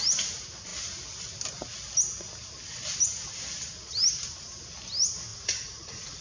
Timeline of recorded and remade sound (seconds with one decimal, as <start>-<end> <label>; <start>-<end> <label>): 0.0-5.3 recorded; 5.3-6.2 remade